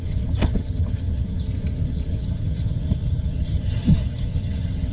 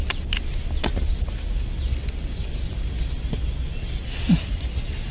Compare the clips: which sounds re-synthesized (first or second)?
first